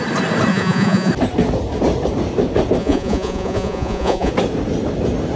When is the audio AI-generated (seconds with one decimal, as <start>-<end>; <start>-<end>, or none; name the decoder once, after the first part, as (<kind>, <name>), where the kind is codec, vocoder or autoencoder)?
0.5-1.1 (vocoder, Vocos); 2.8-4.3